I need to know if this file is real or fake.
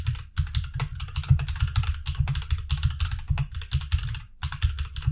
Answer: real